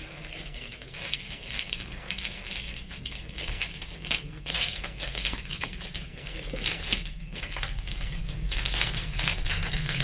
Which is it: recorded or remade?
remade